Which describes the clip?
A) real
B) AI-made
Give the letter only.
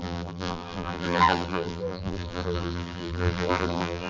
B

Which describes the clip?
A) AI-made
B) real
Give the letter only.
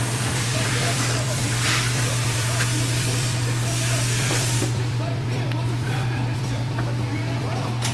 A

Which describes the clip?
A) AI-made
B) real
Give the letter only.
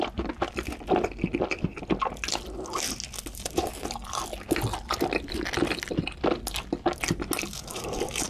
B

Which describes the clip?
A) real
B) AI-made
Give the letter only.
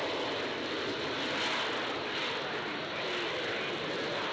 A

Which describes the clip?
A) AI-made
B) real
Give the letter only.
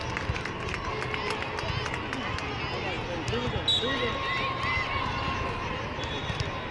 B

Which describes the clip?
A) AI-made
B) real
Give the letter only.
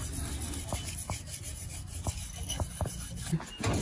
B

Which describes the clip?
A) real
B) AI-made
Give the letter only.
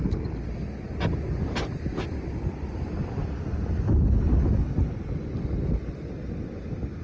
A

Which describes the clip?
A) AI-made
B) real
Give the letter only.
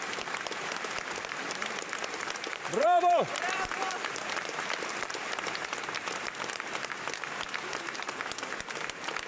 A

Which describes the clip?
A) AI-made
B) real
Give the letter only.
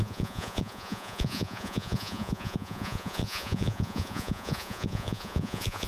A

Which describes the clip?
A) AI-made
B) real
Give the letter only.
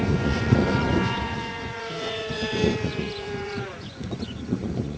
A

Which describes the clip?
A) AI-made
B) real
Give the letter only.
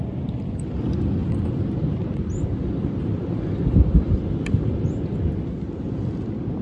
B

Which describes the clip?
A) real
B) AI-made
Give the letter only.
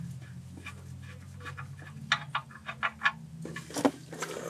A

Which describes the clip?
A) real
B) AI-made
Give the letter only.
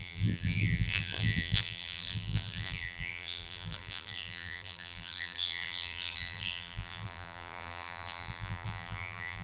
B